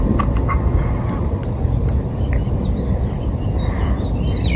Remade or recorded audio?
recorded